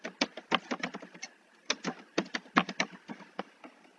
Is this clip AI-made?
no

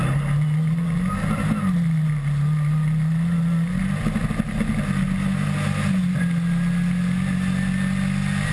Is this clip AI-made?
no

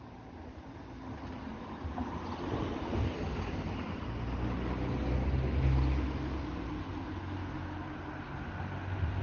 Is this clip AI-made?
no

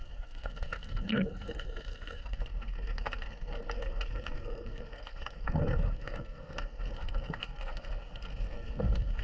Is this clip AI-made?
yes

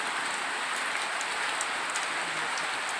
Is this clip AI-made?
no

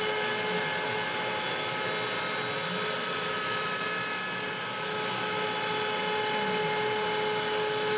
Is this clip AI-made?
no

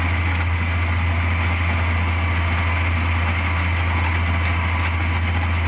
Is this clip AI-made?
no